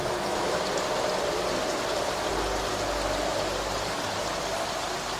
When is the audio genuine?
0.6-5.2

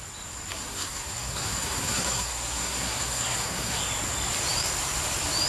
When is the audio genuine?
0.0-0.5; 3.8-5.5

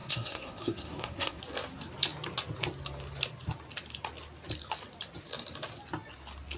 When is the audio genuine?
1.4-6.6

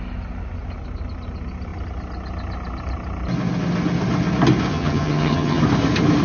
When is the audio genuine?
0.0-4.7; 5.6-6.2